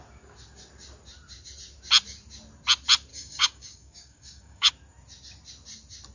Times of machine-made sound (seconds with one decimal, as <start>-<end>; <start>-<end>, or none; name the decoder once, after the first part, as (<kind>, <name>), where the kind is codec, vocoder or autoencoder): 3.1-4.7 (codec, DAC)